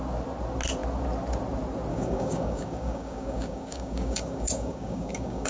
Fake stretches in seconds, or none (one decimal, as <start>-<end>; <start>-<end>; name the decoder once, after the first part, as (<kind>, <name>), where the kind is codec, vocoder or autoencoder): 1.9-5.5 (codec, DAC)